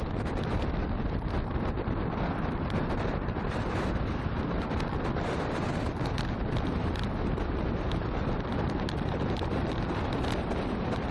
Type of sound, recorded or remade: recorded